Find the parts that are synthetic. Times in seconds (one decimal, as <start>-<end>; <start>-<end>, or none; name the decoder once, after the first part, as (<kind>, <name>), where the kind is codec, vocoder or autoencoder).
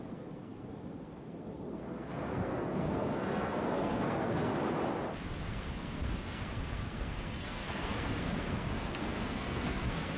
0.0-4.5 (codec, SNAC); 5.4-10.2